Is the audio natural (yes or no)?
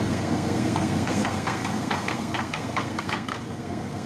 no